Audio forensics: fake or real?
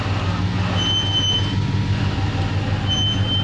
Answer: real